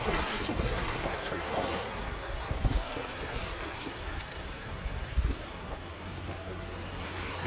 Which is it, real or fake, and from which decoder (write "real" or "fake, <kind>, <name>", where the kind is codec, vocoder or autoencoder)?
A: fake, codec, SNAC